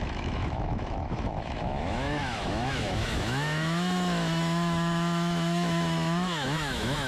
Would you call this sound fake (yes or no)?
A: yes